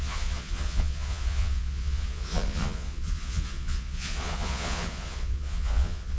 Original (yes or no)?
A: no